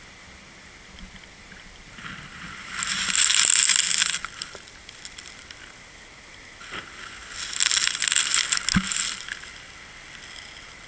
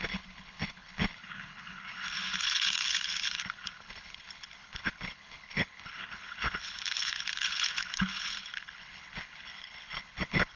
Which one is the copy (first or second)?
second